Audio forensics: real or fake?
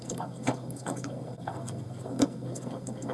fake